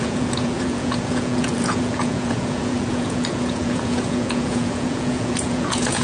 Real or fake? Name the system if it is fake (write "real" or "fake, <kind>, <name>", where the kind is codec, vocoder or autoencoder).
fake, vocoder, Vocos